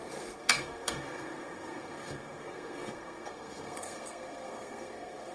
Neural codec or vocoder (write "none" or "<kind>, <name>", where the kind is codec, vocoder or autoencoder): codec, SNAC